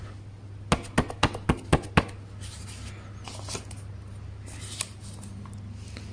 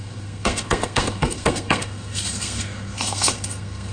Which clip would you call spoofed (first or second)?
second